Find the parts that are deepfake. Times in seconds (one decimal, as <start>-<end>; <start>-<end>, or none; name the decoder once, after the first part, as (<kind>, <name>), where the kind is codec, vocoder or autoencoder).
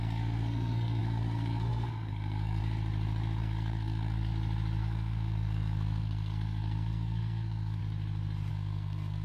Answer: 0.0-2.6 (codec, SNAC); 3.4-4.3; 4.8-7.8; 8.5-9.2